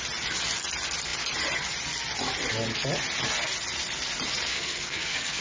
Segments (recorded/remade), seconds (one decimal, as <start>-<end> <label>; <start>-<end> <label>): 0.0-4.5 recorded; 4.5-5.4 remade